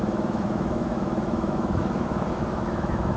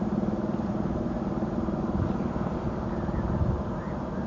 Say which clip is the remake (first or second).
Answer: first